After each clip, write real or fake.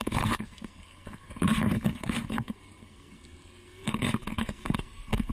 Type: fake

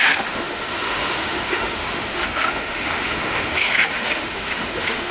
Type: fake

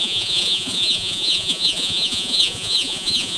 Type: fake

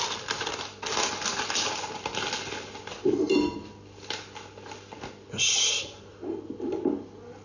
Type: real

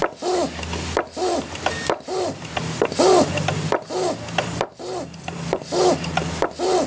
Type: fake